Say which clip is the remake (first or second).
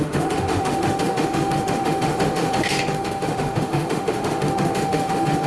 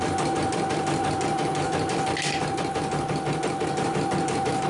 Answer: first